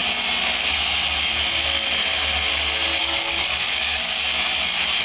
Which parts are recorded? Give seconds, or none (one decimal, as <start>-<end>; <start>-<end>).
0.0-3.0; 4.2-5.0